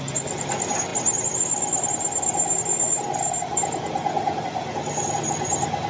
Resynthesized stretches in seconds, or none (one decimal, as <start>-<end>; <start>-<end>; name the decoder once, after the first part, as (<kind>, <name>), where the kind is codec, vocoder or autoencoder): none